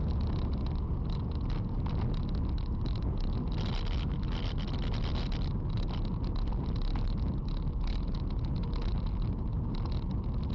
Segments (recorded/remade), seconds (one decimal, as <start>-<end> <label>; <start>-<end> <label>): 0.0-10.5 recorded